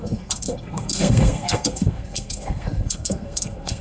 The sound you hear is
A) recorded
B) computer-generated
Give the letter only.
B